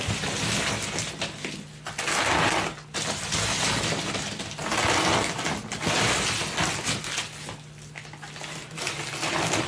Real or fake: real